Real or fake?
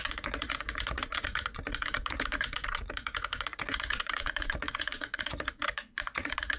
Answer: fake